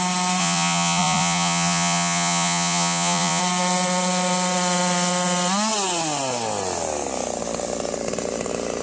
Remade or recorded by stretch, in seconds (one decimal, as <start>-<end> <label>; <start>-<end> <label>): 0.0-0.4 recorded; 0.4-3.4 remade; 3.4-8.8 recorded